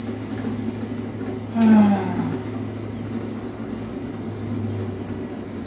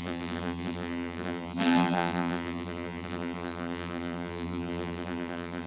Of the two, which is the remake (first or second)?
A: second